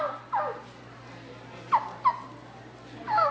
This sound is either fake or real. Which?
real